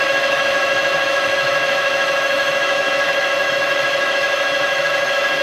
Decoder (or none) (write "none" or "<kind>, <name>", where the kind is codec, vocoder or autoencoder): autoencoder, DAC-VAE